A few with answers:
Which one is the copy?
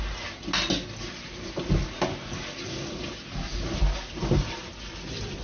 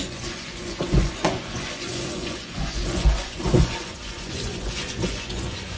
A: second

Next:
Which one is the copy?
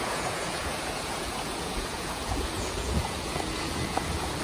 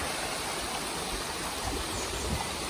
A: first